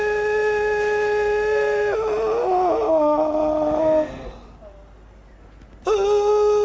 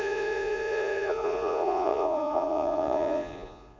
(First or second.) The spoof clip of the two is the second